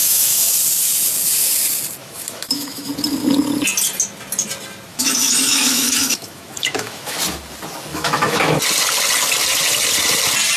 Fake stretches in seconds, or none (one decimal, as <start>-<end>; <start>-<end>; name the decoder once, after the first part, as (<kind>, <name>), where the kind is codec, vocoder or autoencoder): 0.0-0.5 (autoencoder, DAC-VAE); 2.0-2.9; 4.9-7.2; 7.9-8.6